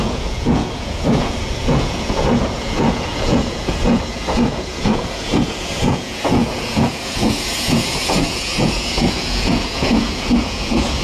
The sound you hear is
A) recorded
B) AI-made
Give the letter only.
B